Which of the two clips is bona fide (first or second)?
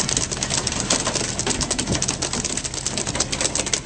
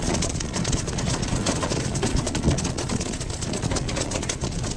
first